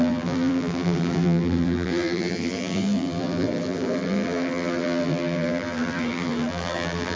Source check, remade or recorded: remade